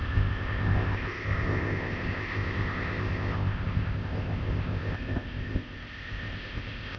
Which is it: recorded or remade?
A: remade